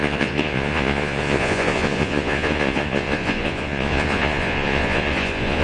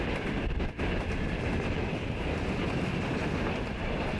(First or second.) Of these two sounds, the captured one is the second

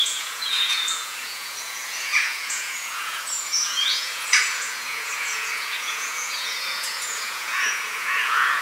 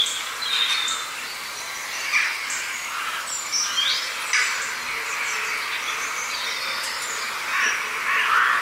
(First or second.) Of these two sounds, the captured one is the second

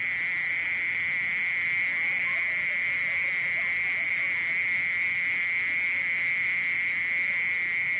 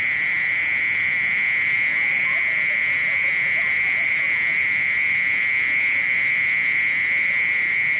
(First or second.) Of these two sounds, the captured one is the first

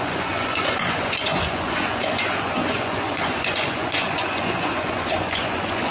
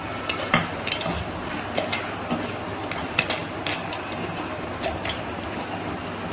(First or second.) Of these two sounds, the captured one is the second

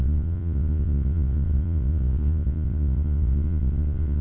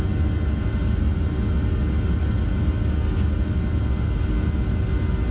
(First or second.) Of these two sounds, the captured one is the second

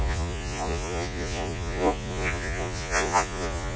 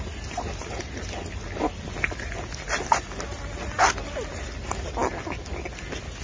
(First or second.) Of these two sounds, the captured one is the second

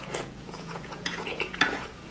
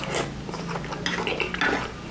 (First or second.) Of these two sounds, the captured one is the second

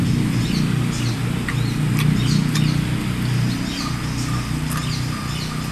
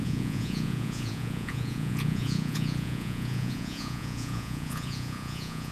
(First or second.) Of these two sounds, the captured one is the first